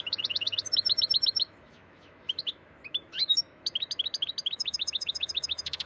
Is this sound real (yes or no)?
no